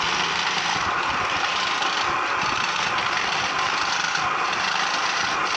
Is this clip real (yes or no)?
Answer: yes